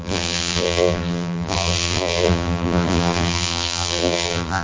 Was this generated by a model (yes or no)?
yes